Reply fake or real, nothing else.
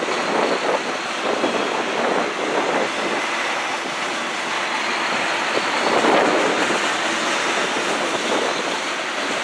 real